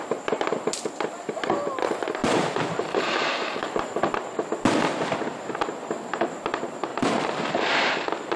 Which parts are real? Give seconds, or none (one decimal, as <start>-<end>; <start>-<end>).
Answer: 0.0-2.2; 4.0-6.9; 7.9-8.4